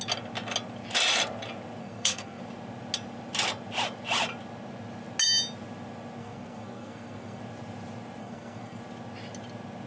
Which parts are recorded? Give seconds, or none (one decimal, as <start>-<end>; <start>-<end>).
0.0-1.8; 2.4-6.2; 7.4-8.2; 8.8-9.9